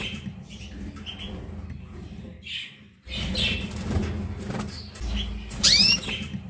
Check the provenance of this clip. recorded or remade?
recorded